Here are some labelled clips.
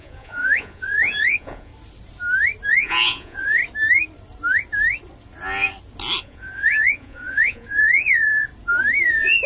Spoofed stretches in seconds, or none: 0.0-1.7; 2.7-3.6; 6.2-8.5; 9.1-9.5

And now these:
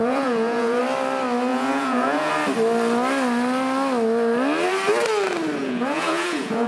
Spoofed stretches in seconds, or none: 0.0-0.8; 1.5-2.3; 5.6-6.7

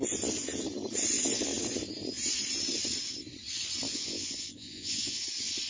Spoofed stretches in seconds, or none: 3.9-5.2

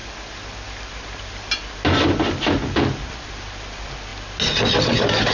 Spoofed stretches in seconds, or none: none

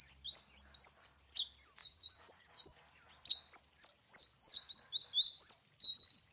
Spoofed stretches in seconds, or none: 1.8-2.5